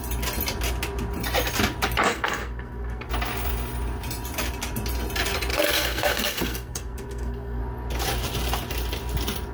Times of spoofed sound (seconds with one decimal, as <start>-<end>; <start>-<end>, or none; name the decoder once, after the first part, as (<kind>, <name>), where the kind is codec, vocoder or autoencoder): 2.1-3.1 (codec, SNAC); 5.5-7.6